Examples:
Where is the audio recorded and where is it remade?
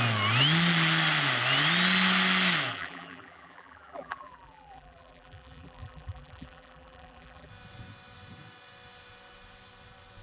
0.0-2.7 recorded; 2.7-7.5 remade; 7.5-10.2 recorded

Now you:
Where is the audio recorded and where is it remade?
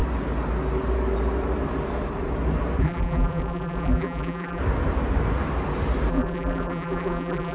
0.0-2.8 recorded; 2.8-4.6 remade; 4.6-6.1 recorded; 6.1-7.5 remade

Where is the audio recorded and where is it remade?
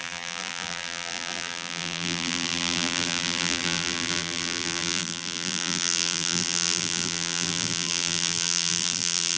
0.0-9.4 remade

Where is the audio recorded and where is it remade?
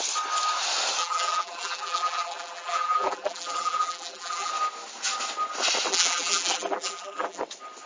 0.0-1.0 recorded; 1.0-4.5 remade; 4.5-5.9 recorded; 5.9-7.4 remade; 7.4-7.9 recorded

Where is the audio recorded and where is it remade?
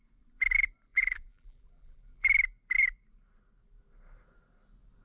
0.0-0.9 recorded; 0.9-2.2 remade; 2.2-5.0 recorded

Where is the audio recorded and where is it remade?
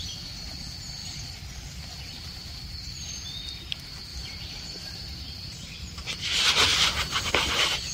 0.0-4.1 recorded; 4.1-7.3 remade; 7.3-7.9 recorded